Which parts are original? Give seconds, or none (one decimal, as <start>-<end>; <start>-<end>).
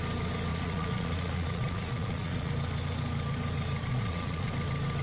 0.0-0.5; 2.5-3.9; 4.5-5.0